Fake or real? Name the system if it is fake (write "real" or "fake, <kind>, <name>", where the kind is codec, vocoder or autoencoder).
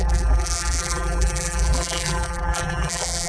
fake, vocoder, BigVGAN v2